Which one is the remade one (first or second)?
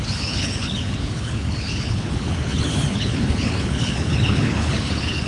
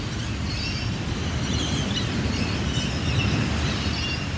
first